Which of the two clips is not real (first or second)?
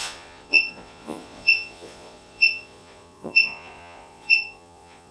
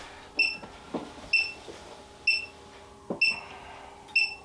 first